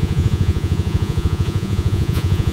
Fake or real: fake